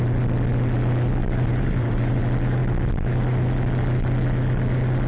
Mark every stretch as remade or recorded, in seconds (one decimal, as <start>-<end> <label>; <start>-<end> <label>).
0.0-1.2 recorded; 1.2-2.2 remade; 2.2-5.1 recorded